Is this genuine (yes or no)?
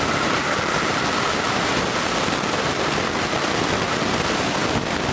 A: yes